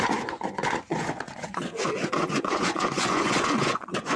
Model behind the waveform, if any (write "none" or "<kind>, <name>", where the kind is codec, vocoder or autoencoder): vocoder, Vocos